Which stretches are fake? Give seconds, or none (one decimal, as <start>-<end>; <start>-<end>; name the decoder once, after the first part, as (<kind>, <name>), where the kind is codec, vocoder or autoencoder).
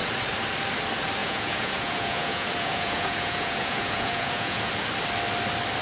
1.2-4.7 (vocoder, Vocos)